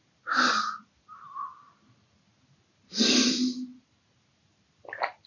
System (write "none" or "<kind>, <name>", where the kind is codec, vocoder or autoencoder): none